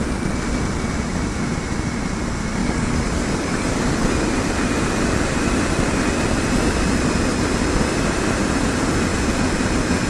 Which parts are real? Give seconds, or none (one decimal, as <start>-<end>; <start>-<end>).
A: 0.0-2.6; 3.9-10.1